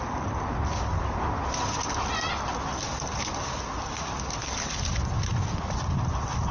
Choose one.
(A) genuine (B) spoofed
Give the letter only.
A